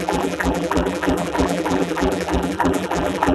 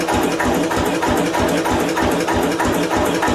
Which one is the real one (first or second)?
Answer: second